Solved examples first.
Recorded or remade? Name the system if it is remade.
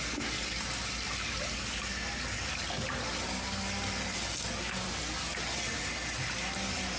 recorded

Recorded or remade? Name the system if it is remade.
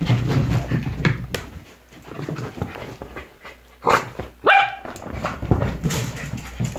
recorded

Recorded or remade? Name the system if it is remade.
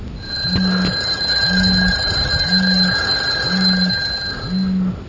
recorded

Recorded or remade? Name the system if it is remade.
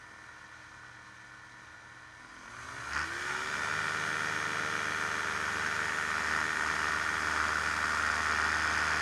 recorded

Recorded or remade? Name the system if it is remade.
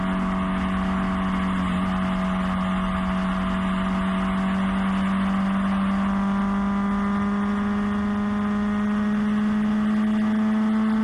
recorded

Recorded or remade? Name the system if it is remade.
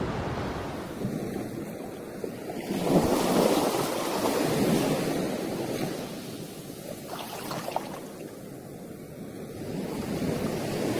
recorded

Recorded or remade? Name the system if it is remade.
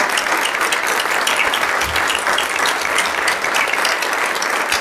recorded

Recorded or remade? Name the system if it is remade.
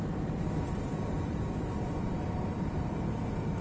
remade, vocoder, BigVGAN v2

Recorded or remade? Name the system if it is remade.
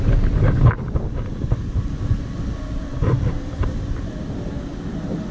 recorded